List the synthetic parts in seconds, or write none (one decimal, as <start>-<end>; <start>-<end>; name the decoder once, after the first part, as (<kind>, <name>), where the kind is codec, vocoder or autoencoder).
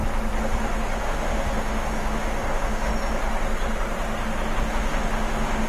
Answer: 1.0-2.9 (autoencoder, DAC-VAE); 4.7-5.7